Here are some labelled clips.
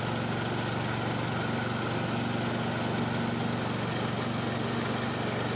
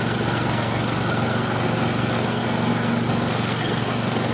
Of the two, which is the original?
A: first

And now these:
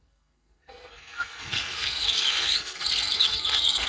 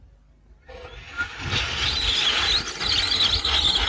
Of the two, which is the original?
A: second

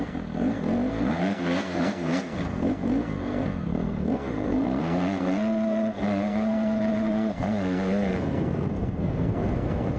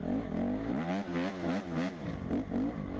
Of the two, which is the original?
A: second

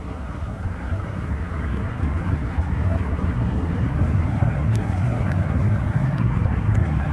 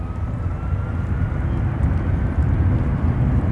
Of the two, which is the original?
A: second